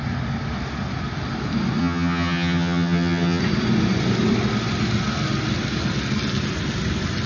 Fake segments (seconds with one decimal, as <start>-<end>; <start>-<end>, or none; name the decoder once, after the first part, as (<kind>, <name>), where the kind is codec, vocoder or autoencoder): 1.8-3.4 (vocoder, HiFi-GAN)